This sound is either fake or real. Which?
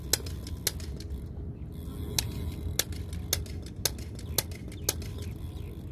real